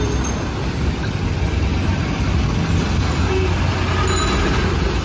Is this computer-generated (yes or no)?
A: no